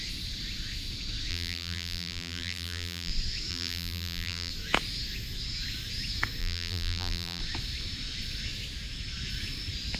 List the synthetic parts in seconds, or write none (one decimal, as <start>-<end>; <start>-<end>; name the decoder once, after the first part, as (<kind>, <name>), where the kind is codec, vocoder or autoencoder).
1.3-3.1 (vocoder, BigVGAN v2); 3.5-4.5; 6.4-7.4